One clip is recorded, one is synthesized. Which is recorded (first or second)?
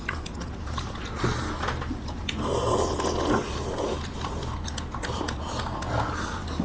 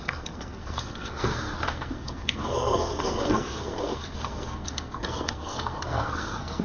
first